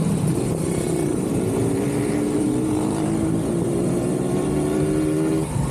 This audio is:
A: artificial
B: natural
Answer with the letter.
A